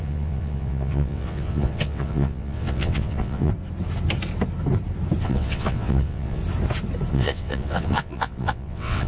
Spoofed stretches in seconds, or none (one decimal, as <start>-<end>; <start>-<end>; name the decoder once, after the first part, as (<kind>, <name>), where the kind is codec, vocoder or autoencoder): 0.0-3.5 (vocoder, WaveNeXt); 5.2-6.4; 7.1-9.1